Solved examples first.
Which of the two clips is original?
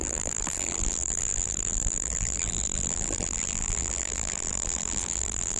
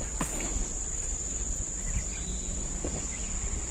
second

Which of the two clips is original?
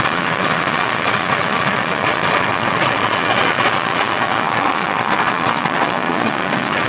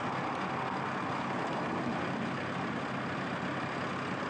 second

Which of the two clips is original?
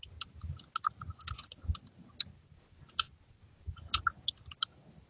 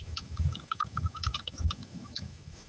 first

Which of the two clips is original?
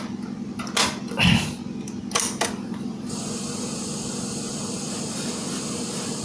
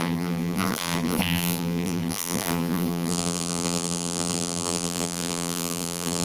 first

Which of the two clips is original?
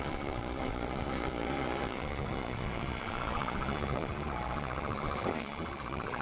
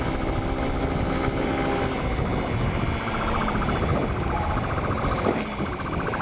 second